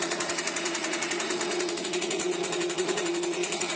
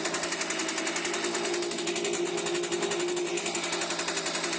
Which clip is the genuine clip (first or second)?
second